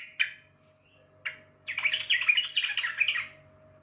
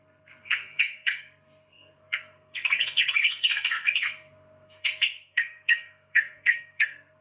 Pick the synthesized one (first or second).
second